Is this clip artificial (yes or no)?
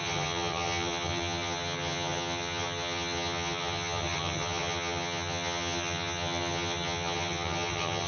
yes